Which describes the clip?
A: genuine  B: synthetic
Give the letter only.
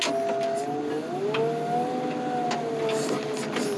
A